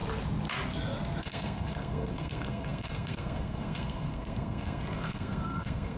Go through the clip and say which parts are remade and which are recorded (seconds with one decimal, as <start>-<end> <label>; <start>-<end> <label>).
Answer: 0.0-1.2 recorded; 1.2-6.0 remade